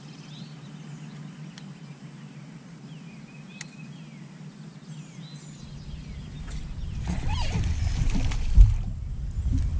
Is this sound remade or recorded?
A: recorded